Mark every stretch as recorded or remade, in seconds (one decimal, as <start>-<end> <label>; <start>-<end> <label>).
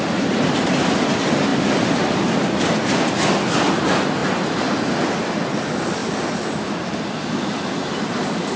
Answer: 0.0-8.6 recorded